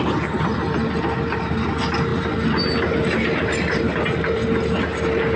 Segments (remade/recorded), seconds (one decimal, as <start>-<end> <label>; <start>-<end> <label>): 0.0-5.4 recorded